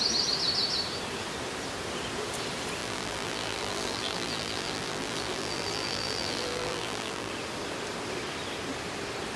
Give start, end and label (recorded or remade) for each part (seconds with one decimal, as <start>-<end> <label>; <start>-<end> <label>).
0.0-2.8 recorded; 2.8-7.3 remade; 7.3-9.4 recorded